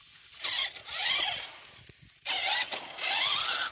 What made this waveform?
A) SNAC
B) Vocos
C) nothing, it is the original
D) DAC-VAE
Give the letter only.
C